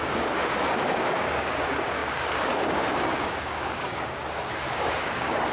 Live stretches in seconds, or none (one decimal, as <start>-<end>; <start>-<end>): none